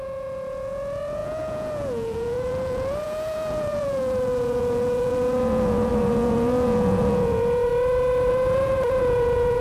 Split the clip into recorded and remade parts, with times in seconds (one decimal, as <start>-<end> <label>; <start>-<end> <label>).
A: 0.0-7.7 remade; 7.7-8.3 recorded; 8.3-9.6 remade